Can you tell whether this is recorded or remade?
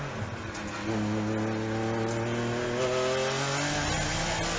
recorded